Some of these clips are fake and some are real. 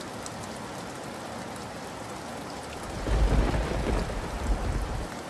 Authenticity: real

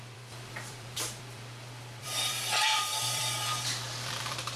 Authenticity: fake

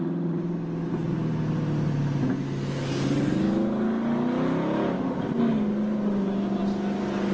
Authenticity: real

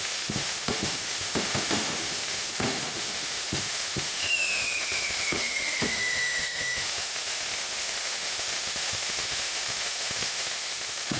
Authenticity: fake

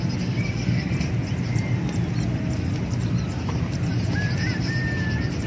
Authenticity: real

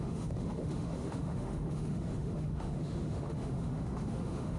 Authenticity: fake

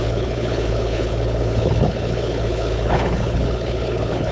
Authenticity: fake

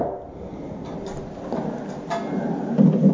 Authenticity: real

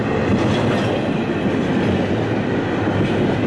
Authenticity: real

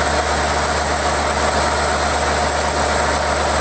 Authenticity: real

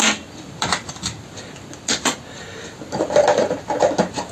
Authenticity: real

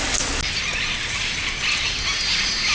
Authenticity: real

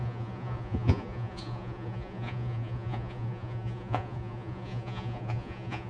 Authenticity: fake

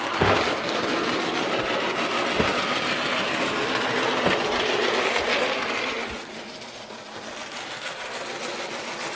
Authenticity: real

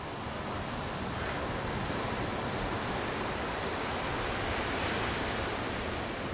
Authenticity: real